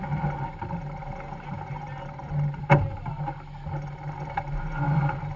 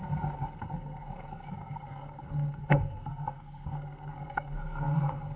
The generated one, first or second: second